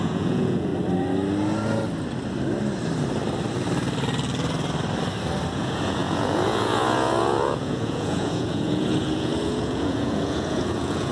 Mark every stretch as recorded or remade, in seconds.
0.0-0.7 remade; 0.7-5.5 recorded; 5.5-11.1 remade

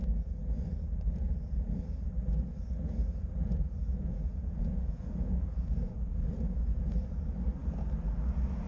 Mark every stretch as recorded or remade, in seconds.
0.0-3.4 recorded; 3.4-6.9 remade; 6.9-8.7 recorded

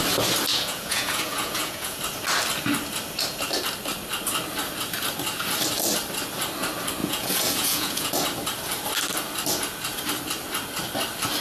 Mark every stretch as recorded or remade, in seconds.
0.0-0.5 recorded; 0.5-2.0 remade; 2.0-7.0 recorded; 7.0-8.1 remade; 8.1-11.4 recorded

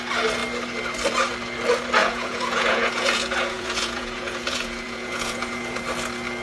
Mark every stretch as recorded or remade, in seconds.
0.0-2.0 recorded; 2.0-5.8 remade; 5.8-6.4 recorded

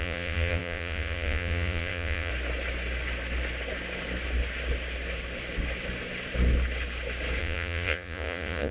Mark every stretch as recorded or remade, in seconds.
0.0-2.3 remade; 2.3-7.4 recorded; 7.4-8.7 remade

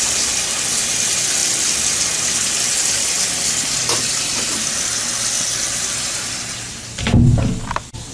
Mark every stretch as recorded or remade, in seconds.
0.0-8.1 recorded